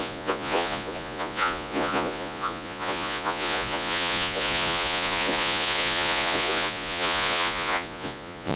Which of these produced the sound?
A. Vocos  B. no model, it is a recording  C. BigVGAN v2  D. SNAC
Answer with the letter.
A